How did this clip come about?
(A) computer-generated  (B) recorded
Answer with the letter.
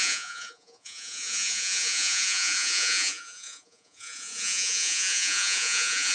A